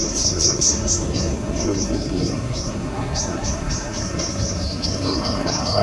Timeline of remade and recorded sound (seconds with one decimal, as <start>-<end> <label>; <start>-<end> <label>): 0.0-5.8 remade